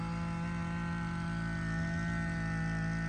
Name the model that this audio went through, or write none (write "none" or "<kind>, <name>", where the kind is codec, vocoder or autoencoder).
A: none